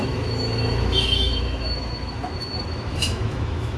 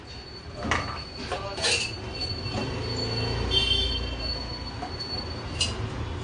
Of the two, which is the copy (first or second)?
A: first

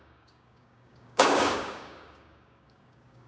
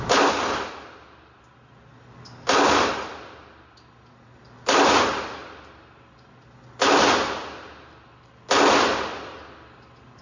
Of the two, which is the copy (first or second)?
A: first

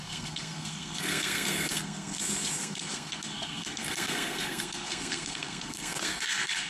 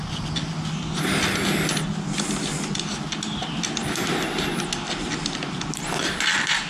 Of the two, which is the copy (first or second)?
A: first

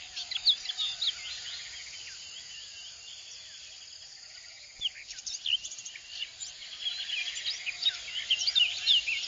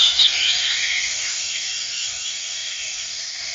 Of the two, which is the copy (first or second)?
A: second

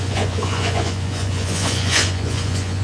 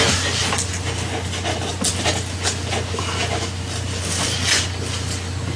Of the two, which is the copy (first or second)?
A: first